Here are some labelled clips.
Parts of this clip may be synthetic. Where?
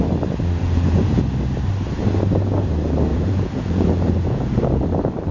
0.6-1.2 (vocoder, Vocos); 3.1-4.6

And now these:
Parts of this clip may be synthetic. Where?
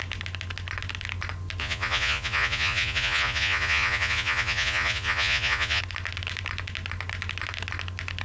1.6-5.8 (vocoder, Vocos)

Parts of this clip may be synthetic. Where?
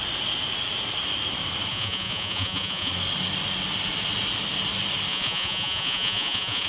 1.7-2.9 (vocoder, Vocos); 5.1-6.7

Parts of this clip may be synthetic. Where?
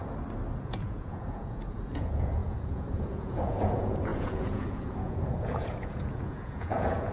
0.6-7.1 (vocoder, Vocos)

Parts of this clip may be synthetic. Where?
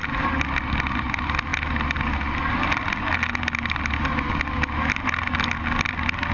none